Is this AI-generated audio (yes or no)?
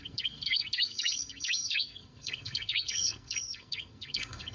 yes